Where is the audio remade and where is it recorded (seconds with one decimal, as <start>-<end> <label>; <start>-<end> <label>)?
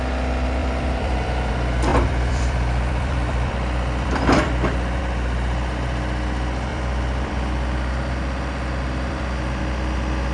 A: 0.0-0.6 recorded; 0.6-1.5 remade; 1.5-1.9 recorded; 1.9-5.0 remade; 5.0-6.7 recorded; 6.7-9.6 remade; 9.6-10.3 recorded